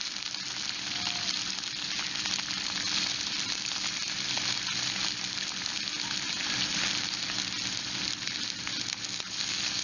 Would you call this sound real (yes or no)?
yes